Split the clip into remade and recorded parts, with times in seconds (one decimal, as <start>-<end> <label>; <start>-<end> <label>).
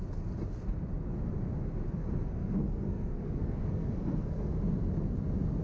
0.0-2.0 recorded; 2.0-4.5 remade; 4.5-5.6 recorded